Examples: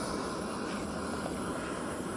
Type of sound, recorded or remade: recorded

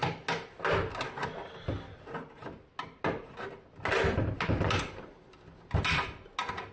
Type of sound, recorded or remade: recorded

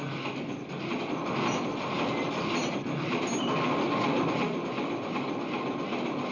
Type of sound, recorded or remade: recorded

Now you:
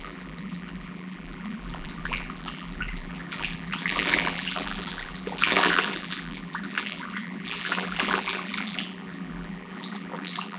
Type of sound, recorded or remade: remade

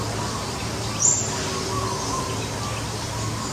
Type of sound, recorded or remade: recorded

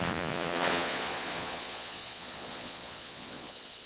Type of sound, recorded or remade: remade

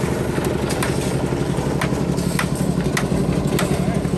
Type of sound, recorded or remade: recorded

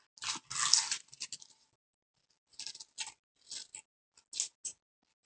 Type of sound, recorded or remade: recorded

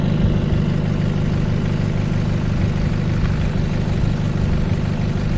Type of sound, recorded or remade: recorded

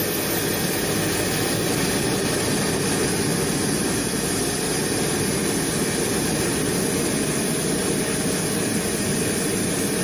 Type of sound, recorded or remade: recorded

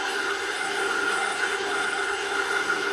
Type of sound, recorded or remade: remade